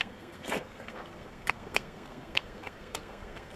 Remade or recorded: remade